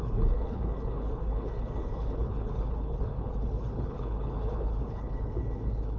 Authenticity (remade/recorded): remade